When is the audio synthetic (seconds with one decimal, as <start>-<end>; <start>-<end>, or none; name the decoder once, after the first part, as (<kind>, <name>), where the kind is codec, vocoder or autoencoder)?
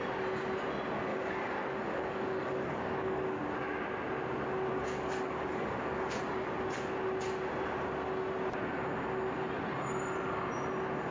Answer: 1.1-3.4 (codec, DAC); 4.7-6.2